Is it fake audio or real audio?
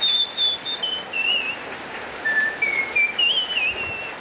real